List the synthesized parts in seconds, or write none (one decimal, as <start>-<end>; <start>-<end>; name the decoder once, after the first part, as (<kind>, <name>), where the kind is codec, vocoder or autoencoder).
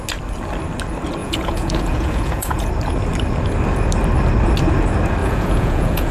1.2-2.7 (vocoder, Vocos); 5.2-6.1